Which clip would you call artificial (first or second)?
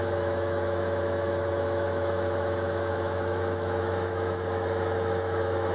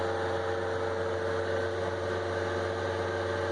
first